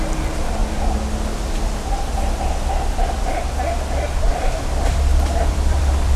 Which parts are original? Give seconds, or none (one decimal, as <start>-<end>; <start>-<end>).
0.6-4.3

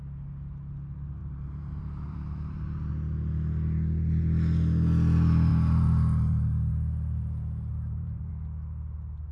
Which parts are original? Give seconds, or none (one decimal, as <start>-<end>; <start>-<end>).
0.0-1.2; 2.9-5.5; 6.7-7.7; 8.3-9.3

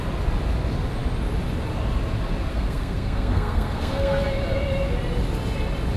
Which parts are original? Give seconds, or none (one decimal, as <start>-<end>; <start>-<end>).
0.0-2.5; 4.2-6.0

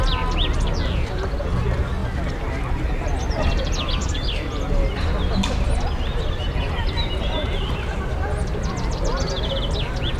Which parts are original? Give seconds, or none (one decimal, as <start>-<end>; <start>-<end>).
0.0-10.2

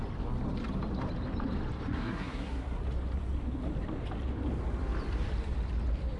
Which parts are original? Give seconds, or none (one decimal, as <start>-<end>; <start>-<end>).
0.0-1.9; 2.8-6.2

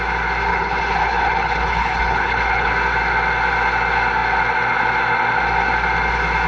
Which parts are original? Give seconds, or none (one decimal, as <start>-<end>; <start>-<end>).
0.0-0.5; 2.7-6.5